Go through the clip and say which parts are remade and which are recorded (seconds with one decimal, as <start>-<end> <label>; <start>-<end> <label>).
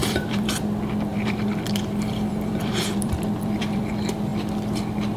0.0-0.6 remade; 0.6-1.1 recorded; 1.1-3.9 remade; 3.9-5.2 recorded